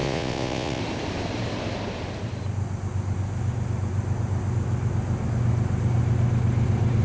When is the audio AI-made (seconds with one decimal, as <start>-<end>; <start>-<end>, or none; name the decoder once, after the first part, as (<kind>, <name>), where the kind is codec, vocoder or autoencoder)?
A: 0.0-0.8 (vocoder, Vocos)